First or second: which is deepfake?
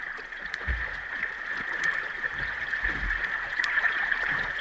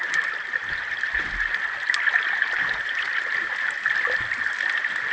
first